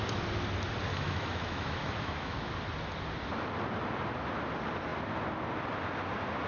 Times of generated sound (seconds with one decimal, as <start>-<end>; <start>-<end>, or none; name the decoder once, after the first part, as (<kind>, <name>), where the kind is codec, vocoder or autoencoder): 0.9-2.5 (autoencoder, DAC-VAE)